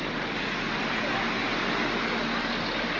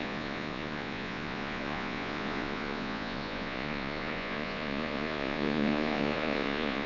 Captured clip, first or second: first